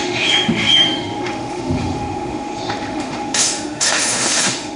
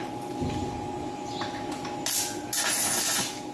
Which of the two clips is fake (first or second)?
first